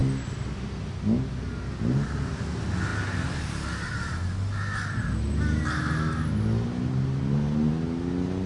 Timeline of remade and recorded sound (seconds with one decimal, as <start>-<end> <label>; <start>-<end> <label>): 0.0-8.5 recorded